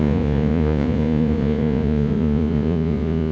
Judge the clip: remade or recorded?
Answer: remade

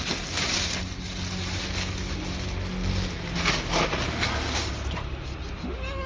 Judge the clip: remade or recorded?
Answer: recorded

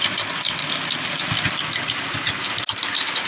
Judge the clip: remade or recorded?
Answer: recorded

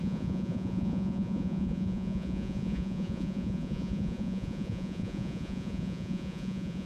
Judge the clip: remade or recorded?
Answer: remade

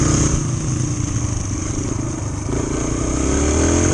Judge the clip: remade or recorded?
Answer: recorded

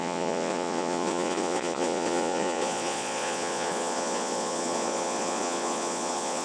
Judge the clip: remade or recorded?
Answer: remade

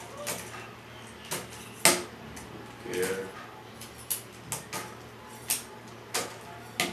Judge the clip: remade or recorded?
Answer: recorded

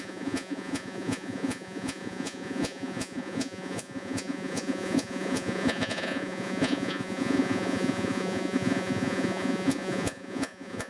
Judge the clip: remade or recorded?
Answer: remade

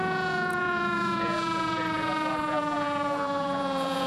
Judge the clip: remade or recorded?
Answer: remade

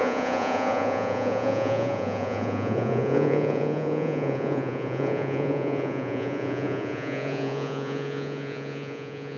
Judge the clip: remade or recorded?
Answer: remade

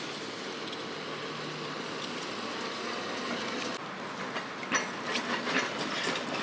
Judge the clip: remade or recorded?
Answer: recorded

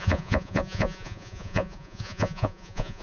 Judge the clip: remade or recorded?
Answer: remade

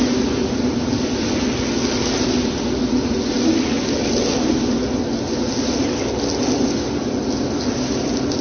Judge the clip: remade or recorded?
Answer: recorded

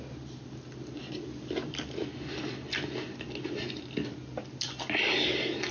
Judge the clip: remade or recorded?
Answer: recorded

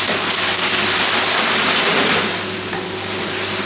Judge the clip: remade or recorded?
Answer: recorded